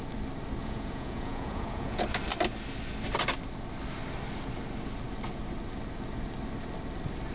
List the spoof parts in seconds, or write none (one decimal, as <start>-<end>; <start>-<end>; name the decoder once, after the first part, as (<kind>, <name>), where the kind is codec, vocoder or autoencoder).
0.6-2.0 (vocoder, Vocos)